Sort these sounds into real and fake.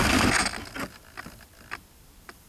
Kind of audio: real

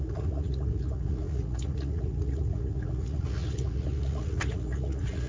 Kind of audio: fake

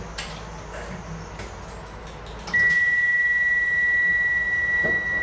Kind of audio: real